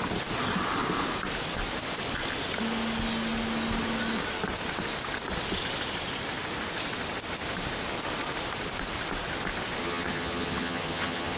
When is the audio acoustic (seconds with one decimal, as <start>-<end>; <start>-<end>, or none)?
0.0-9.8